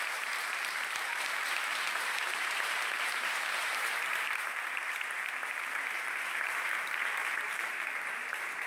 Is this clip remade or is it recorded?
remade